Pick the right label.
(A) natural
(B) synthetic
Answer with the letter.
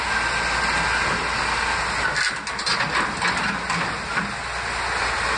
A